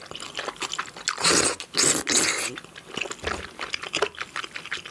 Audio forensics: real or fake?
real